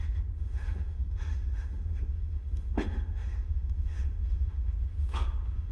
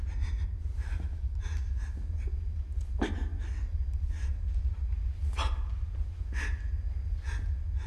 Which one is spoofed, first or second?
first